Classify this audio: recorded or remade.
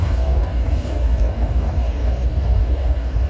remade